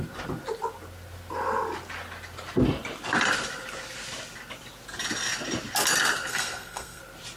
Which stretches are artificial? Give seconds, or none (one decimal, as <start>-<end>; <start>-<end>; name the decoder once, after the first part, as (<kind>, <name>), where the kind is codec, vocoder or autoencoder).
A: 6.3-7.0 (codec, SNAC)